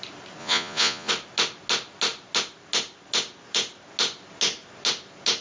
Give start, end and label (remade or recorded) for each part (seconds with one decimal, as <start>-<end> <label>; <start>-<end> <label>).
0.0-0.4 recorded; 0.4-1.1 remade; 1.1-5.4 recorded